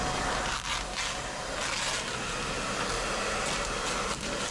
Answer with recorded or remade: recorded